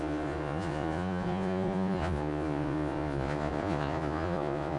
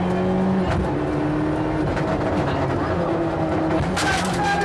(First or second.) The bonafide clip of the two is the second